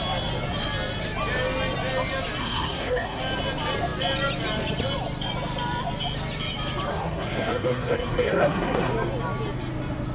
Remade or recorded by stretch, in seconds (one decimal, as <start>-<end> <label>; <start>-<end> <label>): 0.0-2.4 recorded; 2.4-3.2 remade; 3.2-6.9 recorded; 6.9-8.9 remade; 8.9-10.1 recorded